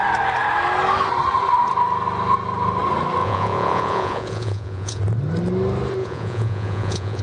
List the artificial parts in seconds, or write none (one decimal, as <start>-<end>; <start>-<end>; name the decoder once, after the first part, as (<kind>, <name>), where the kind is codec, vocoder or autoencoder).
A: 3.2-5.0 (vocoder, Vocos); 6.0-7.2

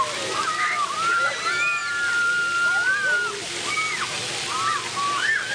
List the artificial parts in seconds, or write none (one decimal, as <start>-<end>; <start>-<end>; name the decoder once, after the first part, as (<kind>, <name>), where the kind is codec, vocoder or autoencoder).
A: none

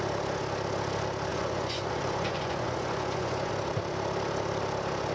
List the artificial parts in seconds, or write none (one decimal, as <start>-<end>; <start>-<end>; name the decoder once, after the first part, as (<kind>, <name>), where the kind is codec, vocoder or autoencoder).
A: 1.3-3.5 (vocoder, Vocos)

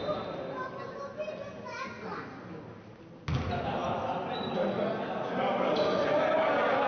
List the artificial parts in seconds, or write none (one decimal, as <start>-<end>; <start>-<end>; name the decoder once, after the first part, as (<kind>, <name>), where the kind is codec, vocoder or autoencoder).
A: none

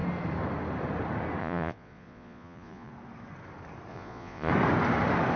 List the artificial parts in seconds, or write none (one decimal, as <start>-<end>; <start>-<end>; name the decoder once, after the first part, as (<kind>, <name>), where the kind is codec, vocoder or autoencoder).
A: 1.4-2.9 (vocoder, Vocos); 3.9-4.5